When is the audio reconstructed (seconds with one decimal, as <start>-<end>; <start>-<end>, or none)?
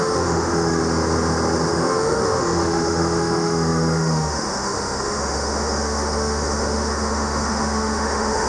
0.0-0.8; 1.7-8.5